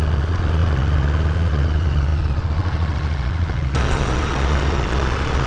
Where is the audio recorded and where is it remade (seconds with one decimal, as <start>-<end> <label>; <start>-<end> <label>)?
0.0-5.5 remade